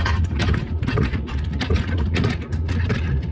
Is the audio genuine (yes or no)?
no